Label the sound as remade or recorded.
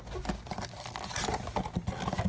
recorded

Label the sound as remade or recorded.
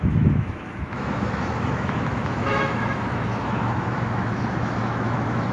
remade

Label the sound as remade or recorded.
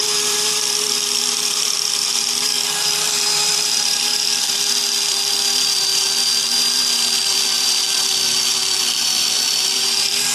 remade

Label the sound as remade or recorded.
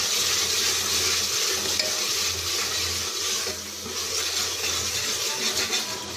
recorded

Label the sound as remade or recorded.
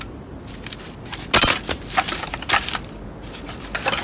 recorded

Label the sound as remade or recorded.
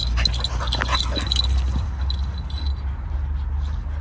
recorded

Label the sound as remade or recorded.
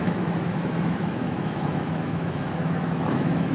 remade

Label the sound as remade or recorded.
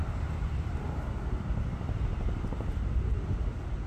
recorded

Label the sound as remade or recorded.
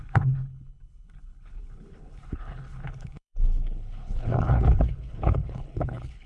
remade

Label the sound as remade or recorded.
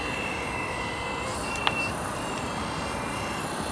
remade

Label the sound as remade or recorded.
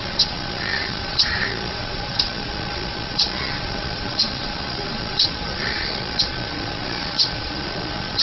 remade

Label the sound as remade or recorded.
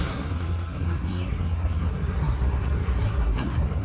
remade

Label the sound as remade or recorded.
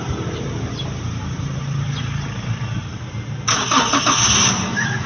remade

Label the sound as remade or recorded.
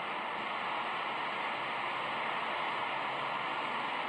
recorded